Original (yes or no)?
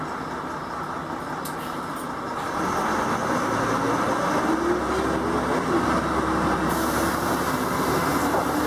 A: yes